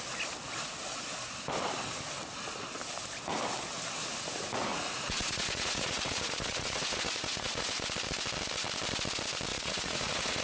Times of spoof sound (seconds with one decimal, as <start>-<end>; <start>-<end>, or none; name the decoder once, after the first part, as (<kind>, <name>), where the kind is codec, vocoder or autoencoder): 4.7-7.7 (vocoder, Vocos); 9.5-10.4